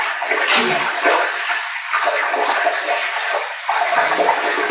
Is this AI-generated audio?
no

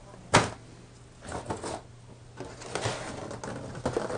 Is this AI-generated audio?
no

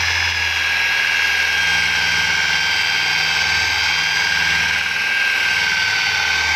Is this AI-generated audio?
no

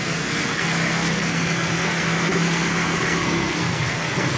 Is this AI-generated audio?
yes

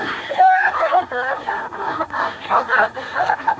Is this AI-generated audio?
yes